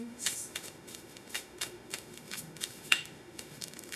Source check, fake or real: fake